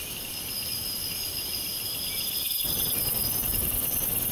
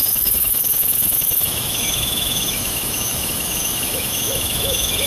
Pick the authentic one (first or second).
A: first